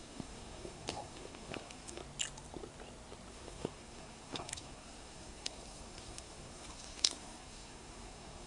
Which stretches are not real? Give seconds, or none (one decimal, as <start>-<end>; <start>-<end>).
0.0-2.0; 3.3-8.5